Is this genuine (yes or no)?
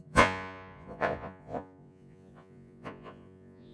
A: no